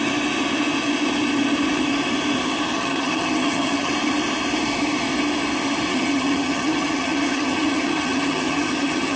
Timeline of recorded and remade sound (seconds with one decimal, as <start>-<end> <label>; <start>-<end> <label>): 0.0-2.7 recorded; 2.7-3.9 remade; 3.9-5.9 recorded; 5.9-9.2 remade